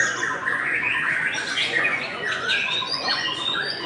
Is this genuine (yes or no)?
no